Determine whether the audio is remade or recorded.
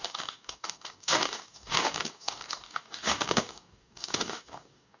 remade